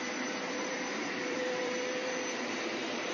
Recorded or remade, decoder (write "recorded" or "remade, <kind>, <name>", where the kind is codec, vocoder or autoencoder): remade, vocoder, BigVGAN v2